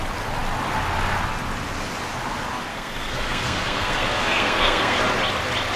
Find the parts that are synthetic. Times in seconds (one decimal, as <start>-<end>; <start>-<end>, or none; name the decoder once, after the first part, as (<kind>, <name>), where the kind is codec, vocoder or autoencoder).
2.7-5.0 (codec, SNAC)